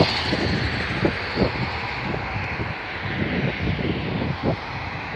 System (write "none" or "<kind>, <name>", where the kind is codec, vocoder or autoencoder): none